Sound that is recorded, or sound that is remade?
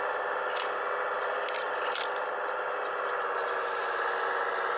recorded